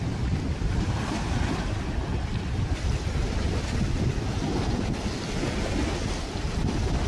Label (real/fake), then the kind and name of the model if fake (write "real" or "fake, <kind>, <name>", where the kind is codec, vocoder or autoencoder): real